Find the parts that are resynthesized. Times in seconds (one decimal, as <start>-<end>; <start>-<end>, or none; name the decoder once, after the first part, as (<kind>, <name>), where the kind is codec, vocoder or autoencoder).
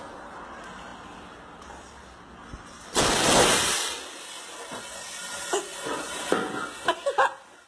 none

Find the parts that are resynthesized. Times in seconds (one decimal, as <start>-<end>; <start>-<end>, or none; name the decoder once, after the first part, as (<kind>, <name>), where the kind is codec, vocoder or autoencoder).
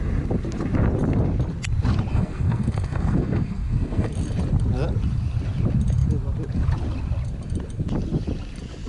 2.1-4.1 (codec, SNAC)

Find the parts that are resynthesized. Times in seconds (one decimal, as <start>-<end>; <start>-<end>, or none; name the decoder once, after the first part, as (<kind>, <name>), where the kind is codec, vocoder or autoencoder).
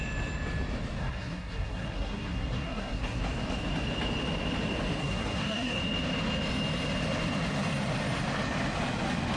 1.0-3.2 (codec, SNAC); 5.0-5.8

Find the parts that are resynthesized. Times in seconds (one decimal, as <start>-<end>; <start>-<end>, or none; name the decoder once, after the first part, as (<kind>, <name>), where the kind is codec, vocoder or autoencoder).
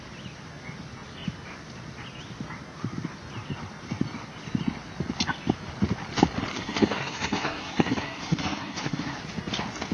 6.5-9.2 (codec, SNAC)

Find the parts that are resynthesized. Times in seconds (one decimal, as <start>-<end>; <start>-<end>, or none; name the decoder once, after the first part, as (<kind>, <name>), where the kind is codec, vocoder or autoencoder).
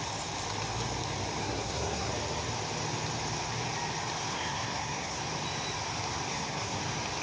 1.4-2.1 (codec, SNAC); 4.3-5.2; 6.3-6.8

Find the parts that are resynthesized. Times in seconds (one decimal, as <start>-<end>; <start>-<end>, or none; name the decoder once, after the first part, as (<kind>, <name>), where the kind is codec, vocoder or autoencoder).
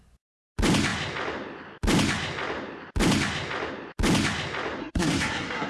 4.8-5.7 (codec, SNAC)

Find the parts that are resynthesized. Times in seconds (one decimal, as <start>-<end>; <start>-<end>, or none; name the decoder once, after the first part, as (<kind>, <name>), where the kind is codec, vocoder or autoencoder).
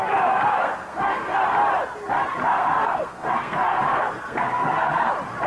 0.5-1.4 (codec, SNAC); 2.4-5.1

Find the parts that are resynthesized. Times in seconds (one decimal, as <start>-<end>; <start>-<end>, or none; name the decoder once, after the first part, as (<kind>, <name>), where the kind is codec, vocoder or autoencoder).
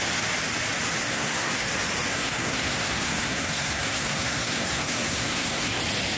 1.1-1.7 (codec, SNAC); 2.1-5.8